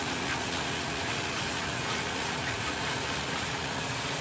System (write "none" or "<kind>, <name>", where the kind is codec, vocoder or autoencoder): vocoder, Vocos